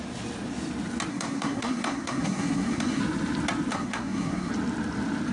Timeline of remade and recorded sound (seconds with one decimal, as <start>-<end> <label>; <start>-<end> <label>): 0.0-1.1 recorded; 1.1-3.0 remade; 3.0-3.7 recorded; 3.7-4.5 remade; 4.5-5.3 recorded